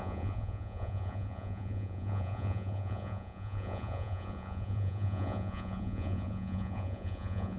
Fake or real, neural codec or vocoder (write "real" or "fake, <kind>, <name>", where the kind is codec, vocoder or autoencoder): fake, vocoder, Vocos